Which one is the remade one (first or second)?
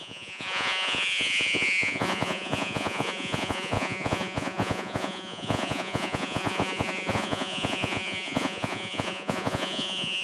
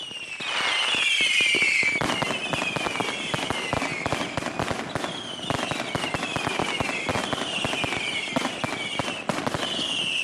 first